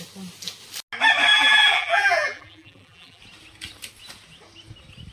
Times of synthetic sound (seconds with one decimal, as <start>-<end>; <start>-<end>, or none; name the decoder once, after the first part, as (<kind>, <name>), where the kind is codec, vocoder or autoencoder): 1.3-3.2 (vocoder, BigVGAN v2)